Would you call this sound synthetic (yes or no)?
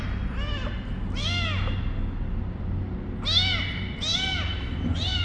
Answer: no